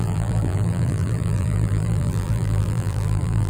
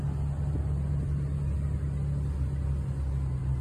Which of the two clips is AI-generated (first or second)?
first